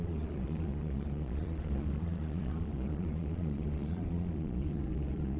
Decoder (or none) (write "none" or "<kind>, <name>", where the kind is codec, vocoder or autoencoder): vocoder, Vocos